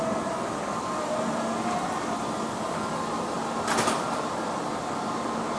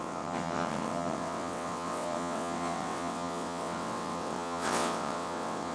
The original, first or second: first